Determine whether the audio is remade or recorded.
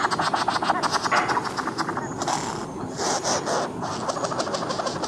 recorded